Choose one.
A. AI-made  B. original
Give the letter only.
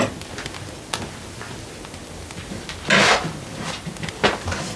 B